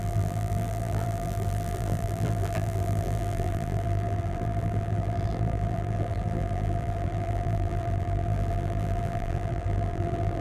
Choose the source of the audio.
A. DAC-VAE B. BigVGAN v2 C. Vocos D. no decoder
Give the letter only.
B